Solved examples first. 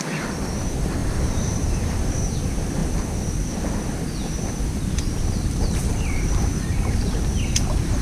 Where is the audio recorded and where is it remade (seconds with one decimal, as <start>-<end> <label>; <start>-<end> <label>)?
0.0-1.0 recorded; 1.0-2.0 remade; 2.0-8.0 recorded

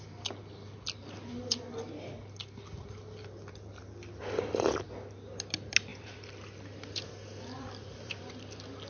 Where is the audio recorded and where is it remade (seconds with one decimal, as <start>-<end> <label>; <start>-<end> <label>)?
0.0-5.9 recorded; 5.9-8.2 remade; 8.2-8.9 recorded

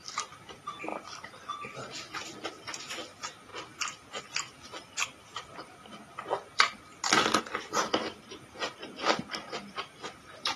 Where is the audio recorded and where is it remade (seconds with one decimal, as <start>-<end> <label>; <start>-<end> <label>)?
0.0-3.5 remade; 3.5-4.2 recorded; 4.2-6.9 remade; 6.9-7.7 recorded; 7.7-10.6 remade